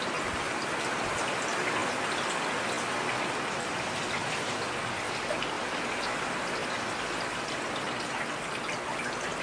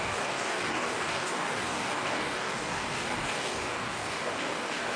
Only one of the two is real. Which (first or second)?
first